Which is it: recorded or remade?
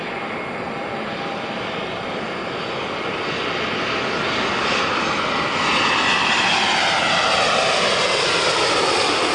recorded